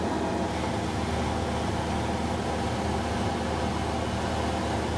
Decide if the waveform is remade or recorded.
recorded